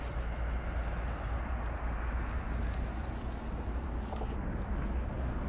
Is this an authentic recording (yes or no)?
yes